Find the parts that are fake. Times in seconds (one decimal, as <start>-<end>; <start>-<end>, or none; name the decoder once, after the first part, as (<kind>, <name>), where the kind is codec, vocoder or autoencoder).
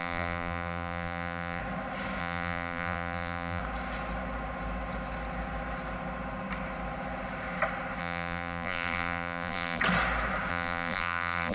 0.0-1.6 (vocoder, BigVGAN v2); 2.2-3.6; 8.0-9.8; 10.5-11.5